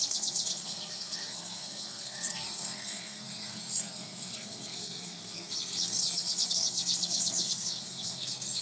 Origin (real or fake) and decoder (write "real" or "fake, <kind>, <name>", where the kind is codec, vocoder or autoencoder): fake, codec, SNAC